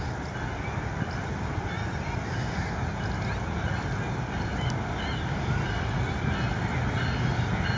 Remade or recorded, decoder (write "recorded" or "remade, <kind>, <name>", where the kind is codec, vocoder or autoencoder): recorded